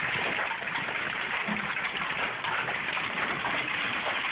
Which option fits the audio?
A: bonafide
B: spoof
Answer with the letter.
B